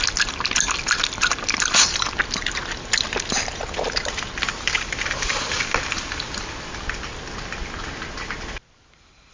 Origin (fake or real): real